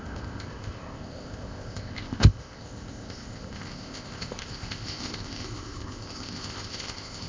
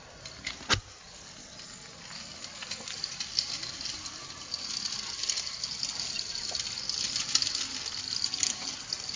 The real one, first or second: second